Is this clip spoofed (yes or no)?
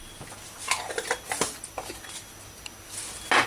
no